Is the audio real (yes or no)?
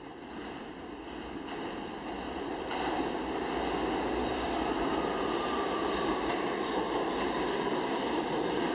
yes